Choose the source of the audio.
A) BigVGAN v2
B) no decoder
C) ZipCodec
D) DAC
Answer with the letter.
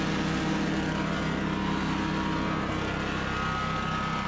B